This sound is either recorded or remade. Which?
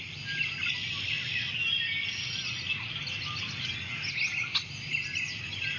recorded